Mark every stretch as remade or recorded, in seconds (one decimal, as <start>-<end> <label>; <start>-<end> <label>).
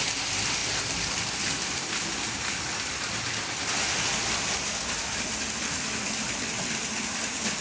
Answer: 0.0-7.6 recorded